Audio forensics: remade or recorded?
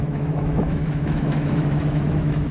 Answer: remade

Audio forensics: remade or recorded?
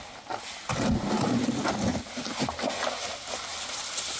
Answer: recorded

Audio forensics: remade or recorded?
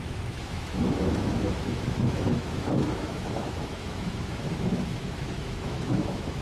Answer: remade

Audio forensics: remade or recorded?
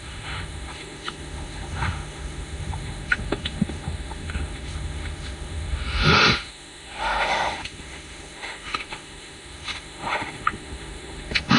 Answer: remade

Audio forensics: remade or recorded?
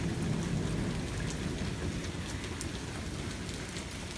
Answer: recorded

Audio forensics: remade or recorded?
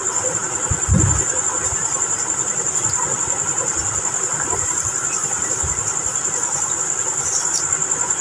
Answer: recorded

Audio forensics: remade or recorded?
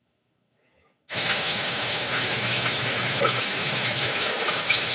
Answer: remade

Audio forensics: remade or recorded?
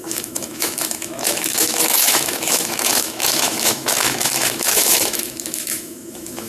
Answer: remade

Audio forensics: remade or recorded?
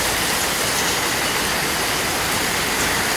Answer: recorded